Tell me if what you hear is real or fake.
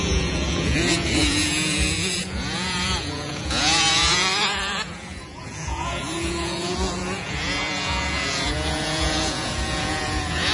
fake